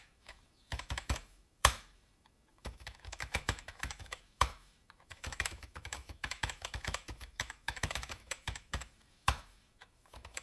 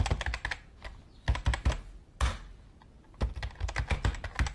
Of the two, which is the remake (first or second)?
first